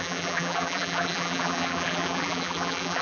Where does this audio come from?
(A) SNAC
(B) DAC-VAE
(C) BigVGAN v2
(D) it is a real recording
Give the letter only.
C